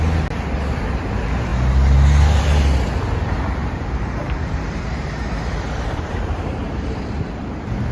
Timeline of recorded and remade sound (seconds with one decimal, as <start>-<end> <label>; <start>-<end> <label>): 0.0-3.6 recorded; 3.6-6.9 remade; 6.9-7.9 recorded